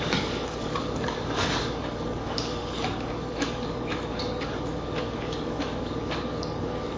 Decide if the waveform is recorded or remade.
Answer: remade